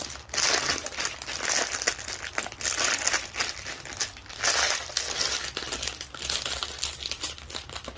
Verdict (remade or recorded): recorded